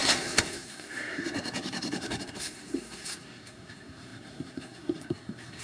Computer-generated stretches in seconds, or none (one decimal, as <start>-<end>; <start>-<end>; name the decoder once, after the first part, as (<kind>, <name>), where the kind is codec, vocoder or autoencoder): 0.0-5.6 (codec, SNAC)

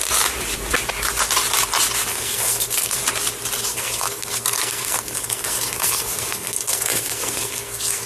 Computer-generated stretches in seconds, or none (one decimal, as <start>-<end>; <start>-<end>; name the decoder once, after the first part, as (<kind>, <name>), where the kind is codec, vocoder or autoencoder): 2.1-3.0 (codec, SNAC); 3.7-8.1

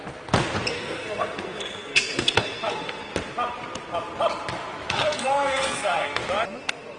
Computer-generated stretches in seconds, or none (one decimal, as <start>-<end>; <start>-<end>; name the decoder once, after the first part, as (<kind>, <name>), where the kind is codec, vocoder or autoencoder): 0.7-3.1 (codec, SNAC); 4.9-6.2

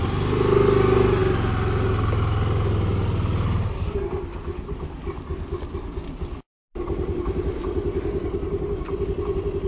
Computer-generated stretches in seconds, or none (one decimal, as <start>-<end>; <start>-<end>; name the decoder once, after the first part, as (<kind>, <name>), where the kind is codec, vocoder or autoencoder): none

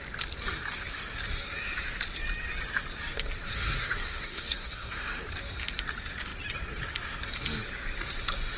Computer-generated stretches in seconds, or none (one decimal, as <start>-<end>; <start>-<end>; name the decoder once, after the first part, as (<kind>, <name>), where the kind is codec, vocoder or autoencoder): 3.5-5.2 (codec, SNAC)